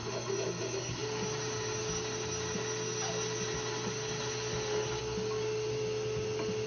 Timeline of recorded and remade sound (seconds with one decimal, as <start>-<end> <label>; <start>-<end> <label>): 0.0-6.7 recorded